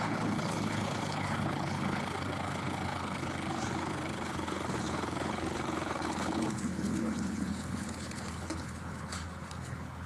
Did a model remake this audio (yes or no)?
yes